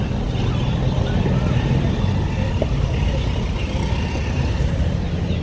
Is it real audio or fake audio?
real